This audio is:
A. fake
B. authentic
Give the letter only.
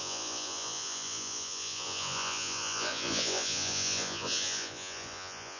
A